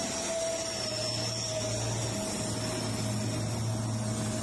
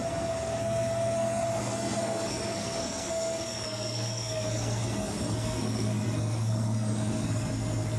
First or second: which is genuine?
first